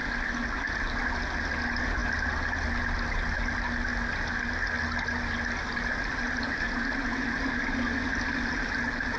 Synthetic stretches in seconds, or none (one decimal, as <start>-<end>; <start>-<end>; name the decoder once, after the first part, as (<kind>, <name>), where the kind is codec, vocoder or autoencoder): none

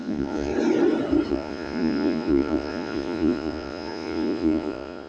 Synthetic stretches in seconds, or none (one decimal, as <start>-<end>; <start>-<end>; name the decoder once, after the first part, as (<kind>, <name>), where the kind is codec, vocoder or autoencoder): 0.0-0.5 (vocoder, Vocos); 1.3-5.1

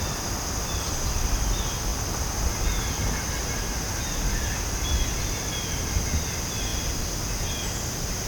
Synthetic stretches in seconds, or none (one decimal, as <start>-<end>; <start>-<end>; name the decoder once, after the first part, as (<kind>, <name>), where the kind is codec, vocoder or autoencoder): none